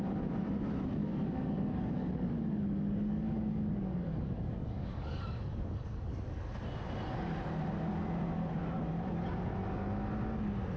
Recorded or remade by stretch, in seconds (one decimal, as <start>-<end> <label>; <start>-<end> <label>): 0.0-1.0 recorded; 1.0-6.1 remade; 6.1-10.8 recorded